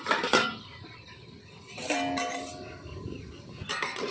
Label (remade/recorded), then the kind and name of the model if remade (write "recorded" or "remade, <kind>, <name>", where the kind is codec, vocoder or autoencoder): recorded